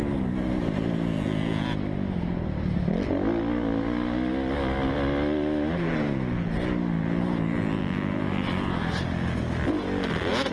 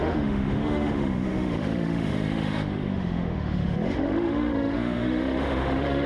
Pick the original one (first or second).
first